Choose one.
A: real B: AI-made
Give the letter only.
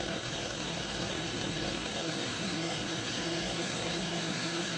B